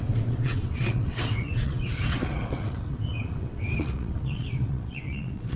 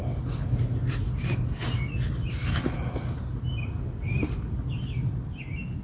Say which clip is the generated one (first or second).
first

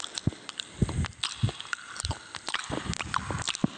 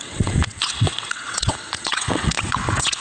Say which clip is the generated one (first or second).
second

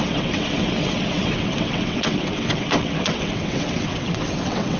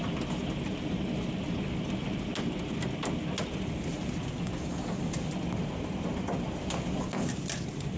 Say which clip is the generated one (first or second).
first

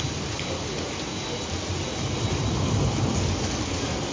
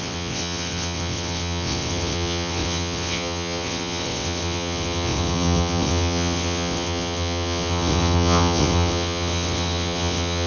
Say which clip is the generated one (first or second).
second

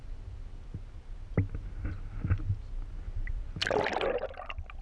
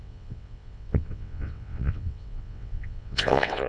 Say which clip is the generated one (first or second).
second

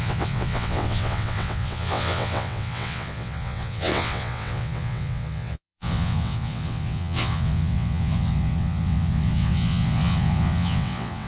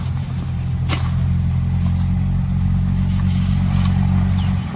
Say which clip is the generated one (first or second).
first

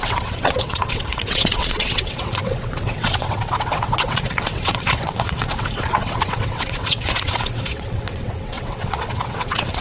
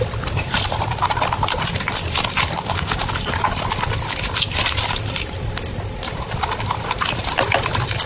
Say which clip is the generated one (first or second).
first